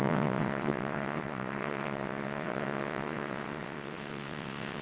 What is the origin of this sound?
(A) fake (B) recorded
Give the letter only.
A